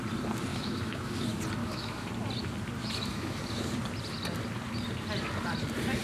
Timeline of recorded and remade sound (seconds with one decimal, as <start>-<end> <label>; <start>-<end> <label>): 0.0-0.5 recorded; 0.5-1.1 remade; 1.1-1.6 recorded; 1.6-2.1 remade; 2.1-2.8 recorded; 2.8-3.4 remade; 3.4-6.0 recorded